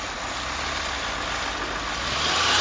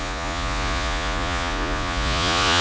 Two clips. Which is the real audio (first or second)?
first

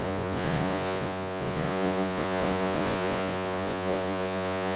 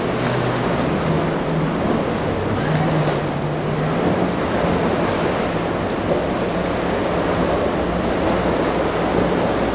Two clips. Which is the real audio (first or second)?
second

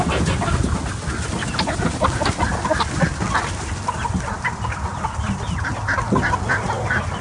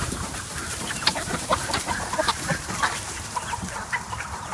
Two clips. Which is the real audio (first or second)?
first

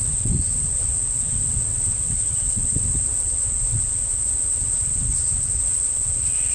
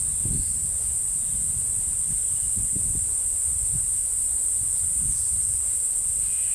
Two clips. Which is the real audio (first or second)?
second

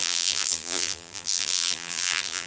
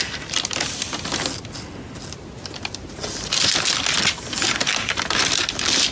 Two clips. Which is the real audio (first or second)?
second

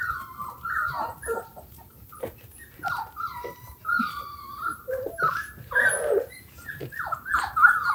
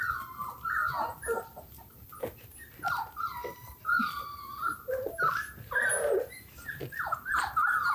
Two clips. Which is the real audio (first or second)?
second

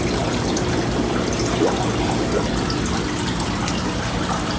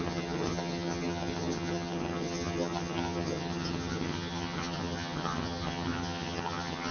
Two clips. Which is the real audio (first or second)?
first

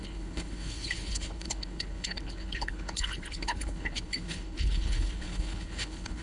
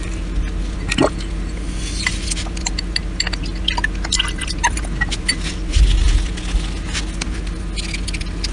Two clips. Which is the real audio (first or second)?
second